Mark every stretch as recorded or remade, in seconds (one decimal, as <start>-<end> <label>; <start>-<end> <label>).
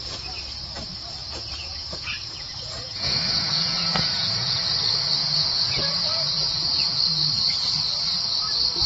0.0-1.2 recorded; 1.2-4.6 remade; 4.6-5.2 recorded; 5.2-7.0 remade; 7.0-8.9 recorded